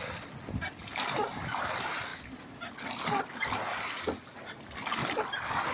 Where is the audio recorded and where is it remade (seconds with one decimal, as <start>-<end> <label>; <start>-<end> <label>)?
0.0-5.7 recorded